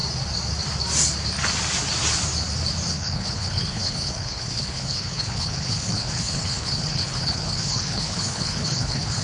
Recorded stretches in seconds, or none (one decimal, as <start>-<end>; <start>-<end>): 0.0-2.9